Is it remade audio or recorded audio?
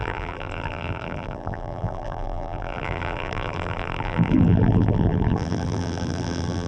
remade